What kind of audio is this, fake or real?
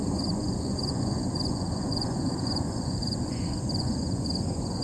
fake